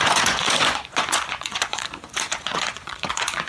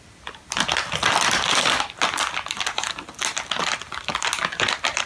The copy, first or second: first